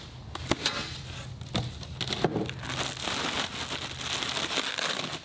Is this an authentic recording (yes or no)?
yes